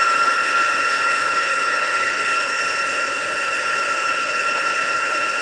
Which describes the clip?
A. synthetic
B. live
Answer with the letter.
A